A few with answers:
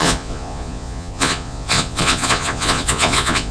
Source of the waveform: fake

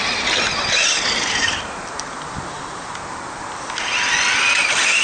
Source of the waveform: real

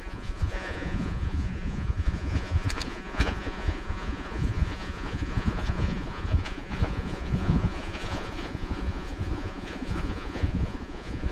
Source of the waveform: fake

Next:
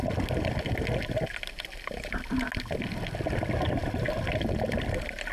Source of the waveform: real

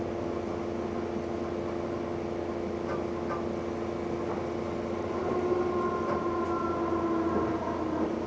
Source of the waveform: real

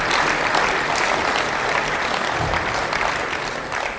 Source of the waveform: real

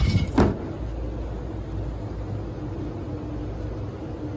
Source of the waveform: real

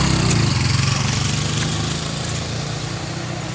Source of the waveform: real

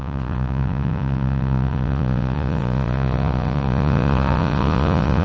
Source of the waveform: fake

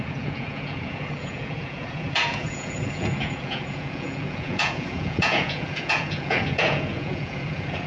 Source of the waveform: fake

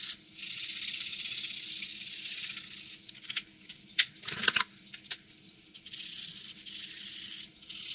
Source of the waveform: real